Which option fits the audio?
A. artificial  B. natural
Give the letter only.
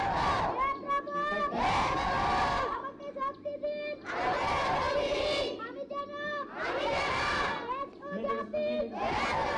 B